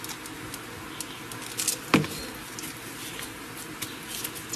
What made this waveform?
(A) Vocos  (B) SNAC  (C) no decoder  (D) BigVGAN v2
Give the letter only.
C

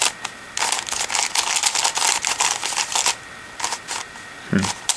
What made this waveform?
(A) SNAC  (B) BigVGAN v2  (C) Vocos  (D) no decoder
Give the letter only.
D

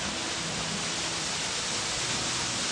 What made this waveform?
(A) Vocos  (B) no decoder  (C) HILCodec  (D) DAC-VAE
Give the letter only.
B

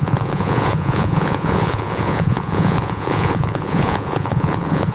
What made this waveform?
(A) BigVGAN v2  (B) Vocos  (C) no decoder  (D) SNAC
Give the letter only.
B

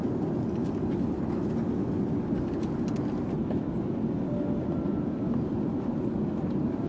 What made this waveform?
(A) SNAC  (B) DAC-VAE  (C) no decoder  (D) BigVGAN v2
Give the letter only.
C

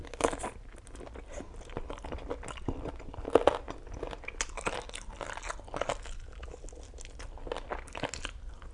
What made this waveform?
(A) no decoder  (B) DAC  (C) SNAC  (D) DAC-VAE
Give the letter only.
A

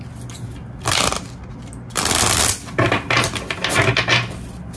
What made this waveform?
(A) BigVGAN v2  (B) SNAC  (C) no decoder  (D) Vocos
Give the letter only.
C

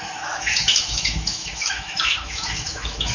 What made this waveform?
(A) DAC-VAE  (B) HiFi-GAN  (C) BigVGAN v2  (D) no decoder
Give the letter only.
A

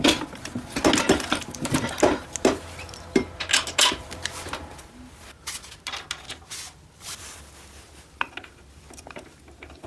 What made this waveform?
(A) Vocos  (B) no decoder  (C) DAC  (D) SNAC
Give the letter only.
B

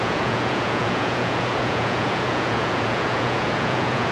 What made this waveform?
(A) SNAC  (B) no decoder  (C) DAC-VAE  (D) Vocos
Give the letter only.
D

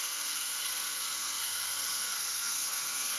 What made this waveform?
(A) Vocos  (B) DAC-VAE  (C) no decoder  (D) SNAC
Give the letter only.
D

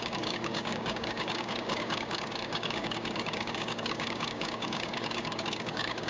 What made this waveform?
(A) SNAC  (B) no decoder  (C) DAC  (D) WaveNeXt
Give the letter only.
C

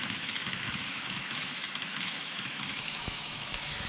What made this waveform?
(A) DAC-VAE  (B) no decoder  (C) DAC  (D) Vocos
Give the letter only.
A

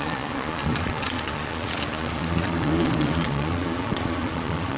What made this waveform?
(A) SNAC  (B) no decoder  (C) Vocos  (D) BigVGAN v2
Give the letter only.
C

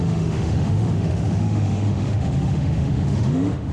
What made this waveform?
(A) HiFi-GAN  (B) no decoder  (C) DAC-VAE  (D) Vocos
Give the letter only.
C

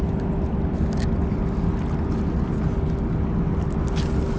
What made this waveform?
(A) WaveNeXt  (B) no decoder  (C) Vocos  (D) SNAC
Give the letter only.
B